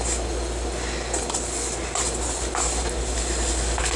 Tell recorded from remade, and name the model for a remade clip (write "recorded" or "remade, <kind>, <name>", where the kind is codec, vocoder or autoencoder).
recorded